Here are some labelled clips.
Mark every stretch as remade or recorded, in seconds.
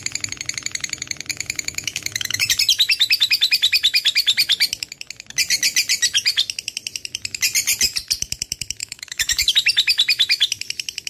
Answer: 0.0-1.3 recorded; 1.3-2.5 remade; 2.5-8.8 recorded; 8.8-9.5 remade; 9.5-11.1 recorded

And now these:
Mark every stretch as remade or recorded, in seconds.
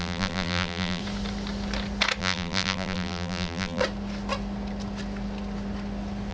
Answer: 0.0-1.0 remade; 1.0-2.2 recorded; 2.2-3.8 remade; 3.8-6.3 recorded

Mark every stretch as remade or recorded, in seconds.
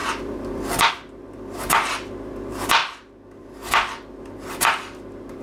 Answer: 0.0-0.9 remade; 0.9-5.4 recorded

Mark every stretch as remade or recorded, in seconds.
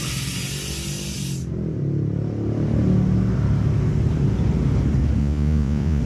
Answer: 0.0-5.2 recorded; 5.2-6.0 remade